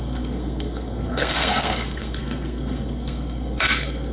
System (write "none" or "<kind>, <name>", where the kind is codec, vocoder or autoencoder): codec, SNAC